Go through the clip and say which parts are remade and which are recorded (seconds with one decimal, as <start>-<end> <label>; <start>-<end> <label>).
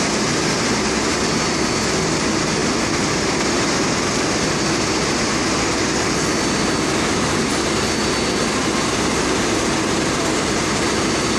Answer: 0.0-11.4 recorded